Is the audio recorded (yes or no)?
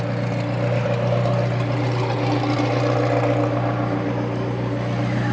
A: yes